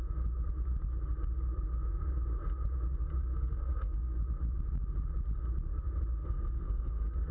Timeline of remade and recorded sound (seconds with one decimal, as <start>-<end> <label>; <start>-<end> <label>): 0.0-3.2 recorded; 3.2-4.2 remade; 4.2-6.2 recorded; 6.2-7.3 remade